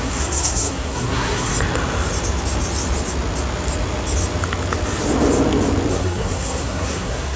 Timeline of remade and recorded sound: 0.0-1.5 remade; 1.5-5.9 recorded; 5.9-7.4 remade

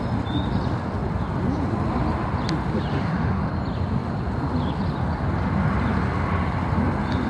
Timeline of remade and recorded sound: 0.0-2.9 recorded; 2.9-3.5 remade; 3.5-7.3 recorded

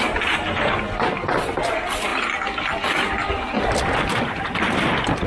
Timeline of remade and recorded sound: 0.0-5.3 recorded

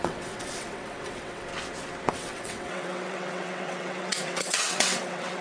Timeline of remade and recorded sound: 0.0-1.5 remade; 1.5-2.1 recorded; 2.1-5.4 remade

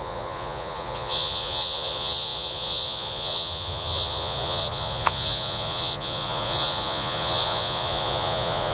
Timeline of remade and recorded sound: 0.0-8.7 remade

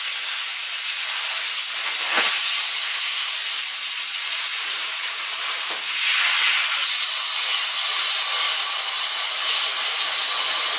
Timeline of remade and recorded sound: 0.0-2.8 recorded; 2.8-3.3 remade; 3.3-10.8 recorded

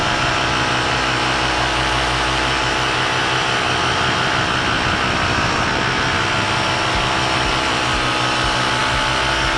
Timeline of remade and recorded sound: 0.0-9.6 recorded